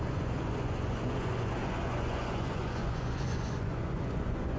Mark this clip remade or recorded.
remade